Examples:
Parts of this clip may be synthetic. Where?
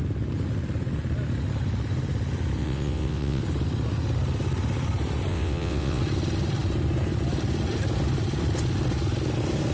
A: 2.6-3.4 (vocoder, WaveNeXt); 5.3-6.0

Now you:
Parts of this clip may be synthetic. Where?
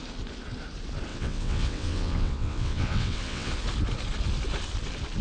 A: 1.1-3.5 (vocoder, WaveNeXt)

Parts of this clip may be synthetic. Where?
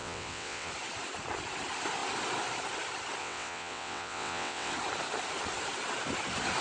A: 0.0-0.7 (vocoder, WaveNeXt); 3.2-4.7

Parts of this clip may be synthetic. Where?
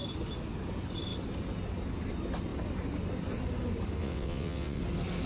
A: 4.0-4.8 (vocoder, WaveNeXt)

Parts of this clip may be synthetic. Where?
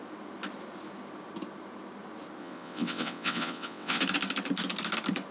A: 2.4-4.0 (vocoder, WaveNeXt)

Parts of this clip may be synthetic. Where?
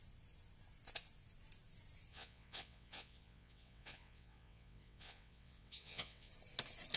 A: 2.1-6.3 (vocoder, WaveNeXt)